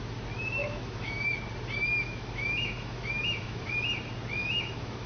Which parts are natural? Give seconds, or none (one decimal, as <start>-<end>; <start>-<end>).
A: 0.0-0.6; 1.3-1.9; 3.7-4.4